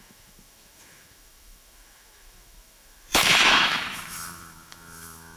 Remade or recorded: remade